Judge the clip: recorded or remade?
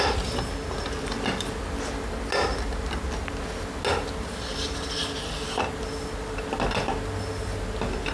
recorded